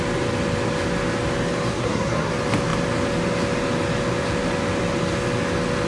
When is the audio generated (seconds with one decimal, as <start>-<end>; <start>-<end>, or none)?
1.7-2.3